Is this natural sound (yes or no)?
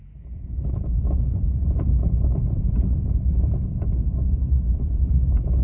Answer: no